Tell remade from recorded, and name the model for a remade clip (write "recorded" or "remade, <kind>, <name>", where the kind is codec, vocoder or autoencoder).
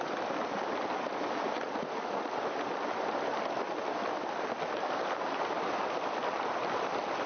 recorded